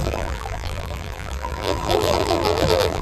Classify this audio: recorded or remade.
remade